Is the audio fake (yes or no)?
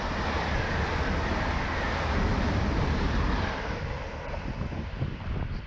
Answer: no